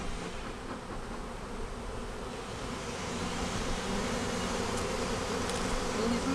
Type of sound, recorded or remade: recorded